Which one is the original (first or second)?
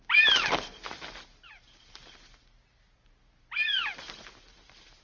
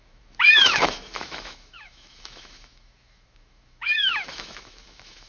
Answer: first